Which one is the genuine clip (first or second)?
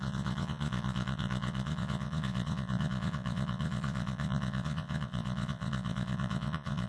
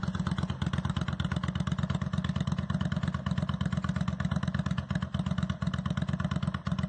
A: second